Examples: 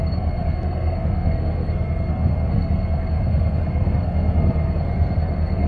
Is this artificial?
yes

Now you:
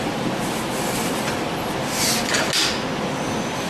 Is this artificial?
no